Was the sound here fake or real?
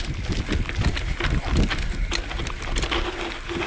real